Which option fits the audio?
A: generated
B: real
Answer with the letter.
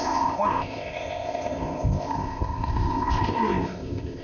A